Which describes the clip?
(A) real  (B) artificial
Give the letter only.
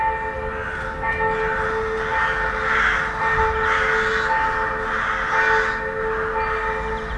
A